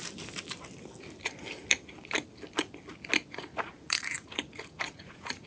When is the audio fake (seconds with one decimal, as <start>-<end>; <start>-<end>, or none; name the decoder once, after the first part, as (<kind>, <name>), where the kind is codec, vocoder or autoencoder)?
3.3-5.5 (vocoder, Vocos)